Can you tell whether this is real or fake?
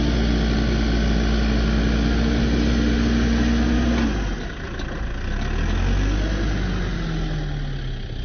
real